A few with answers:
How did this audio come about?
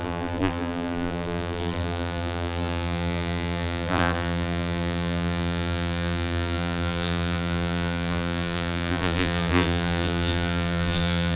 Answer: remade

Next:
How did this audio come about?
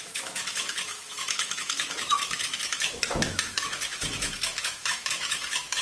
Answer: remade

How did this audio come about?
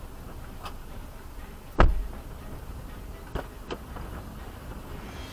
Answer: recorded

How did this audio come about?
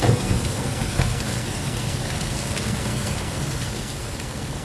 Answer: remade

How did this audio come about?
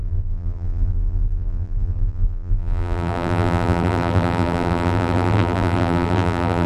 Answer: remade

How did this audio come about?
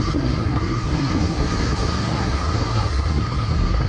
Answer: remade